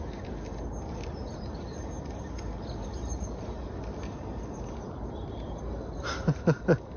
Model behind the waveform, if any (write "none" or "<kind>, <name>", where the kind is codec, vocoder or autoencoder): none